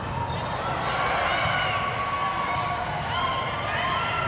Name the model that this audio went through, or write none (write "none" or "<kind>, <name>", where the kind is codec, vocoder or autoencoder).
none